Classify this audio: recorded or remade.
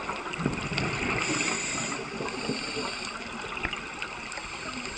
recorded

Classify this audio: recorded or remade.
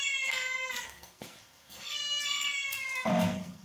remade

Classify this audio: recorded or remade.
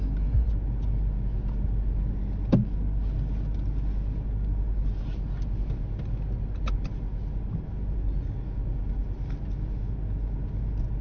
recorded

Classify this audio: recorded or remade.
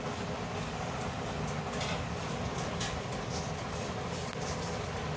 recorded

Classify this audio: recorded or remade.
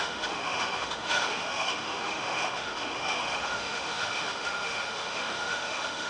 remade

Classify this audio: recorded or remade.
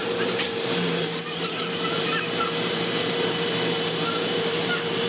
remade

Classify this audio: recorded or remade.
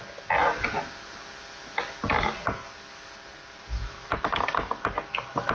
recorded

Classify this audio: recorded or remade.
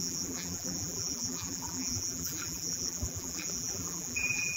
remade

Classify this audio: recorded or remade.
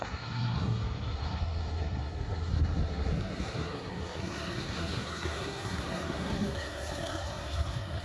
remade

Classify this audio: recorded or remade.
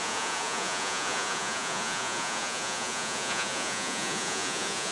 remade